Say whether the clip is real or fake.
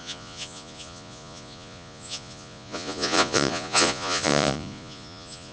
fake